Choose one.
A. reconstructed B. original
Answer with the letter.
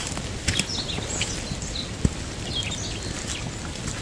B